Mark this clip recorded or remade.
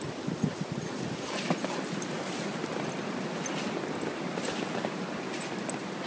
recorded